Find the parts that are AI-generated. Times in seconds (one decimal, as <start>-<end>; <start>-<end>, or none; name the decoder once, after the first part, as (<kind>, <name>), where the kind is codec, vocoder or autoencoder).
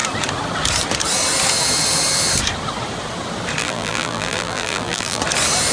3.6-5.2 (vocoder, BigVGAN v2)